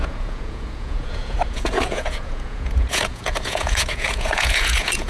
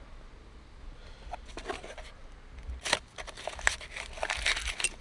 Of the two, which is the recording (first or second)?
second